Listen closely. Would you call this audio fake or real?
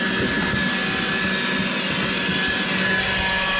real